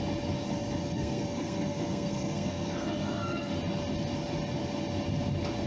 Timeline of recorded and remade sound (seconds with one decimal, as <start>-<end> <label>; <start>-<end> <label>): 0.0-0.8 recorded; 0.8-3.5 remade; 3.5-5.7 recorded